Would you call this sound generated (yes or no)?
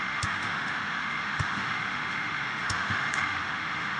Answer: yes